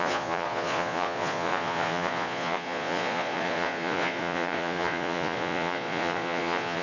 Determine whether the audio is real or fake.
fake